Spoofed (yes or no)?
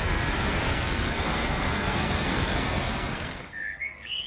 yes